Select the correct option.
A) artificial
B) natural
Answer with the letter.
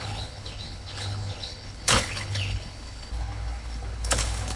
A